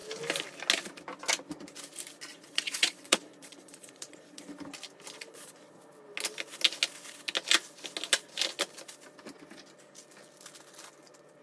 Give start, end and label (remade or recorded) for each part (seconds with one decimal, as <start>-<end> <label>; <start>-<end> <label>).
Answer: 0.0-2.3 recorded; 2.3-4.4 remade; 4.4-5.2 recorded; 5.2-5.8 remade; 5.8-11.4 recorded